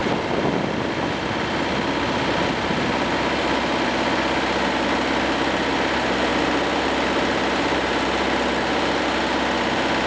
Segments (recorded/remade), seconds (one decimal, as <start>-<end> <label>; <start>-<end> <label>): 0.0-10.1 recorded